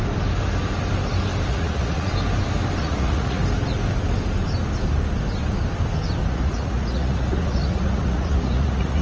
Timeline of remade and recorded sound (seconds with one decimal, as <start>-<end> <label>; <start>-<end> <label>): 0.0-1.5 recorded; 1.5-2.1 remade; 2.1-2.8 recorded; 2.8-3.4 remade; 3.4-6.3 recorded; 6.3-9.0 remade